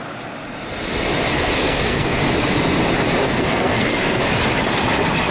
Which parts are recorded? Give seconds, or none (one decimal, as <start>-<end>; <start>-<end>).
0.0-1.6; 2.2-3.2; 4.2-5.3